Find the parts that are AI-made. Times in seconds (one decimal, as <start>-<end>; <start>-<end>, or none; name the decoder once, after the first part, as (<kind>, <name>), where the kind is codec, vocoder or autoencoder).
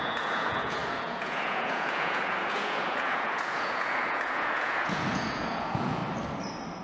0.0-6.0 (vocoder, Vocos)